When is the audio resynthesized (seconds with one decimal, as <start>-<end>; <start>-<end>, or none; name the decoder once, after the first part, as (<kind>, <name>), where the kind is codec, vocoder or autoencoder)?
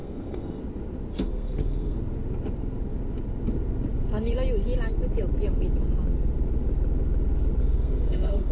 0.0-0.6 (codec, SNAC); 1.1-2.0; 7.6-8.5